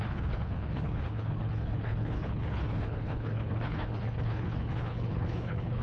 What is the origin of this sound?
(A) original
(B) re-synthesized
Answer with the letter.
B